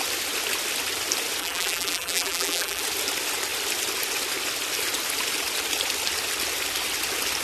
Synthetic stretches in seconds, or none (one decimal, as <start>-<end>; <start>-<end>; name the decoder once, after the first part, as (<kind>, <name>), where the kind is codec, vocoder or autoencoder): 1.4-2.8 (vocoder, BigVGAN v2)